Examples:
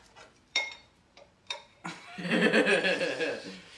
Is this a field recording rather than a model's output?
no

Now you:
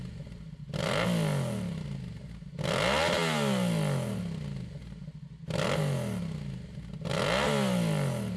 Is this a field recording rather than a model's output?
yes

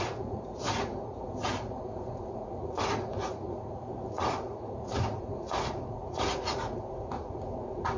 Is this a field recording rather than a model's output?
no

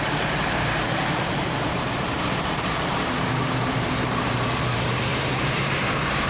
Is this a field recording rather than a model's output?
no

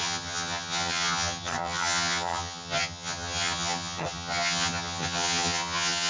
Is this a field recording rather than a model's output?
no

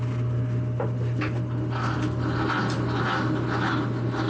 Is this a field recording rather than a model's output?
yes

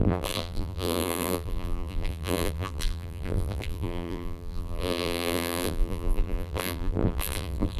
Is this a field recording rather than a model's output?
no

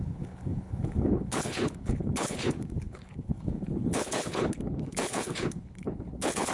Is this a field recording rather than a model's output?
no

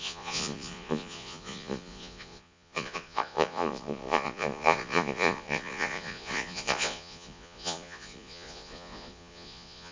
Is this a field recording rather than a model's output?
no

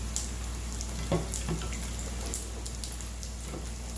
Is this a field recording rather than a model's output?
yes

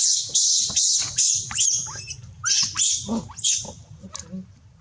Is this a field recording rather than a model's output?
yes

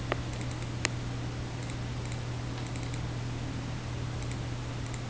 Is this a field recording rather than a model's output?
yes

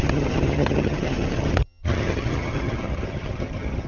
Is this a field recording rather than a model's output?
no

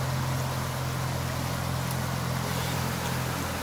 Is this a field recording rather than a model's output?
yes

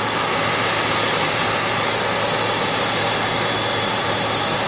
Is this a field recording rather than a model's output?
yes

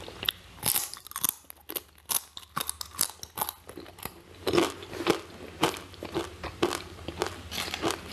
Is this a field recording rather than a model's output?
yes